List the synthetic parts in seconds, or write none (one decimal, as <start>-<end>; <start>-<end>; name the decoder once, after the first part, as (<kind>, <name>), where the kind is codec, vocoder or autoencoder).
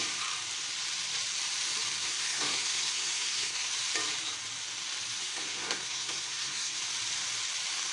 2.0-3.7 (codec, SNAC); 5.2-6.8